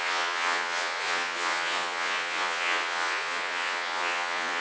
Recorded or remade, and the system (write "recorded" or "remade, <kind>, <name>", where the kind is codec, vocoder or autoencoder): remade, vocoder, Vocos